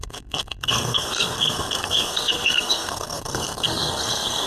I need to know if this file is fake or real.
fake